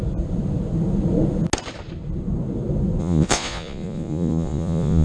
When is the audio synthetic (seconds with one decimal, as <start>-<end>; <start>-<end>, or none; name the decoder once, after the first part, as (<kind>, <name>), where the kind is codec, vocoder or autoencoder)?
3.0-5.0 (vocoder, Vocos)